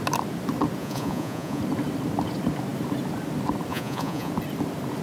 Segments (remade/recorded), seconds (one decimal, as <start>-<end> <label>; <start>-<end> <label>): 0.0-0.8 recorded; 0.8-1.6 remade; 1.6-3.7 recorded; 3.7-4.3 remade; 4.3-5.0 recorded